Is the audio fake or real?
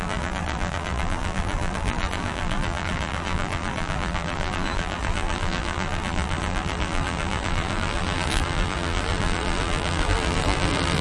fake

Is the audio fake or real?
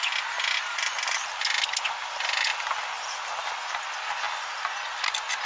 real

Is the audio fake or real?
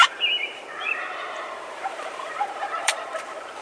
fake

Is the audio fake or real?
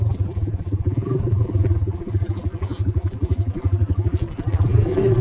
fake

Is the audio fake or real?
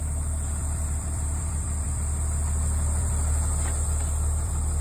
fake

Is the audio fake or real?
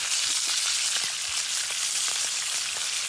real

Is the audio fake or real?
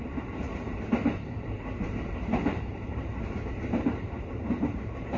fake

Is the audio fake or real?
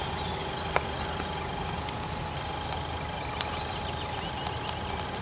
real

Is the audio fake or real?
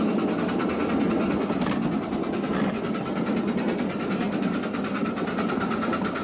real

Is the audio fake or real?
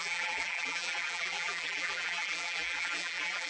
fake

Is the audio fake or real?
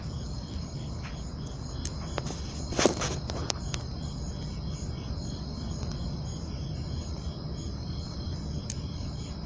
fake